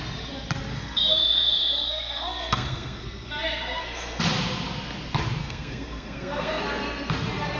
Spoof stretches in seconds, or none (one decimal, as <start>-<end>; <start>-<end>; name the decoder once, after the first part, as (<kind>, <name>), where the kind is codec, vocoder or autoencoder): 0.7-4.2 (codec, SNAC); 5.4-6.6

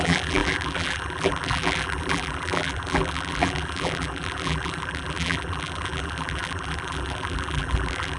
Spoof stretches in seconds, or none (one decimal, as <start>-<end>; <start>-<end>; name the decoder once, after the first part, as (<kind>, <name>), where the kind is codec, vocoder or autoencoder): 0.0-8.2 (vocoder, BigVGAN v2)

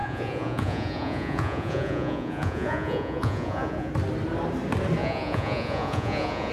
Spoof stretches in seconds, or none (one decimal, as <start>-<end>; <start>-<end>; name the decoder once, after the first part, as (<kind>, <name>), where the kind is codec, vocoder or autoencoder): 0.0-3.9 (vocoder, Vocos); 5.0-6.5

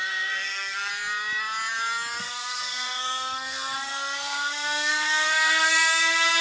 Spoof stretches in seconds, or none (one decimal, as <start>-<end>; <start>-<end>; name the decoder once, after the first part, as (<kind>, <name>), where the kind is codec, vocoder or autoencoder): 0.0-0.9 (codec, SNAC); 2.2-6.4

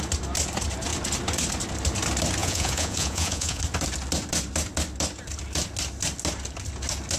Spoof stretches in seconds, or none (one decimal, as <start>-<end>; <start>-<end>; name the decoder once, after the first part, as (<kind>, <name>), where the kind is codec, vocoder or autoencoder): 2.4-3.6 (vocoder, Vocos)

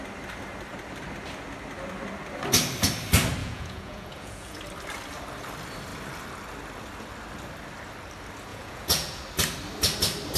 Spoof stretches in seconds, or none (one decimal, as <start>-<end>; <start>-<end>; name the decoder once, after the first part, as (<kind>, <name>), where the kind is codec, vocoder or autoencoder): 3.4-4.6 (vocoder, Vocos); 8.5-9.2